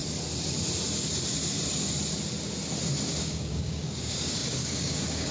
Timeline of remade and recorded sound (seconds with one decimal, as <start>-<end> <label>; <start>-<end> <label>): 0.0-3.2 recorded; 3.2-5.3 remade